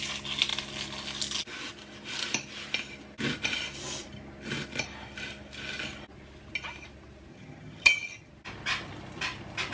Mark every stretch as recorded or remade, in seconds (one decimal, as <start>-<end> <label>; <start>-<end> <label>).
0.0-7.3 recorded; 7.3-8.3 remade; 8.3-9.7 recorded